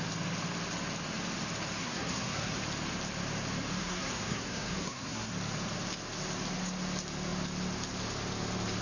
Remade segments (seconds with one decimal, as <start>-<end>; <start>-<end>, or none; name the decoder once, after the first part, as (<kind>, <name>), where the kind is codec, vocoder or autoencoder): 1.8-2.6 (codec, SNAC); 3.8-5.3